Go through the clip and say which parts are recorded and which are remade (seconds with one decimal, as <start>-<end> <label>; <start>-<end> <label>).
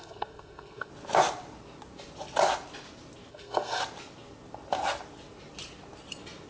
0.0-0.9 remade; 0.9-3.3 recorded; 3.3-3.8 remade; 3.8-6.5 recorded